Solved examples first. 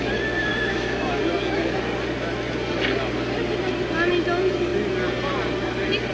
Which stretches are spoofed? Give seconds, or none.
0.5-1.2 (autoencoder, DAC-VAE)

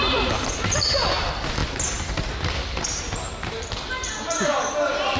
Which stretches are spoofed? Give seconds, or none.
none

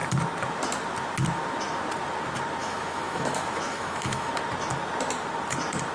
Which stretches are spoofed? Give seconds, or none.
2.6-4.3 (autoencoder, DAC-VAE)

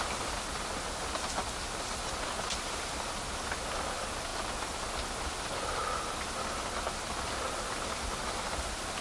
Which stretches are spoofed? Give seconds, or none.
none

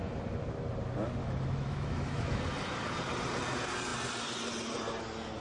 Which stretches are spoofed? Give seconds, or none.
1.2-2.4 (autoencoder, DAC-VAE)